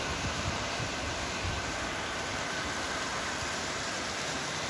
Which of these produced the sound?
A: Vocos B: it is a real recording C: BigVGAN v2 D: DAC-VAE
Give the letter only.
C